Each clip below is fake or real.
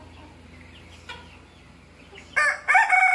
real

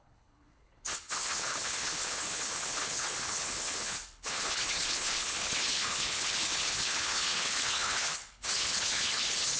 fake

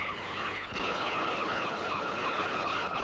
fake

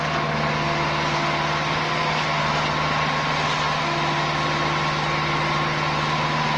real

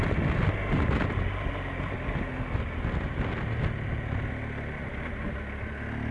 real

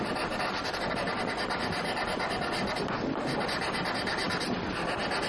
real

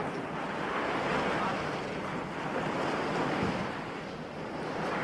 real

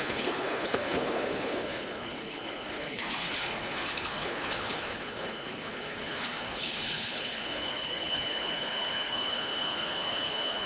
fake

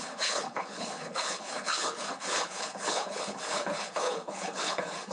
fake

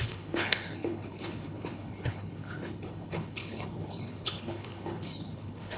fake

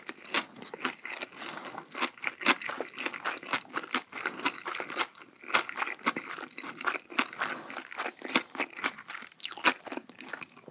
real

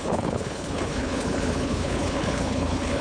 fake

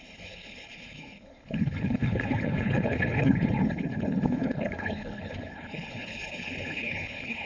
fake